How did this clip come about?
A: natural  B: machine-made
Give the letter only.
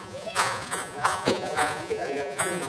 B